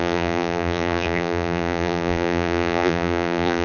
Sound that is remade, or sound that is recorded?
remade